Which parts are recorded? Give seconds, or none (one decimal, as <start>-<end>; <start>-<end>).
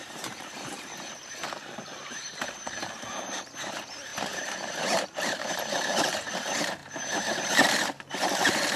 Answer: none